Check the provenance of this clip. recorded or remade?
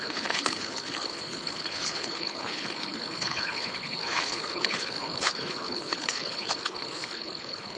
remade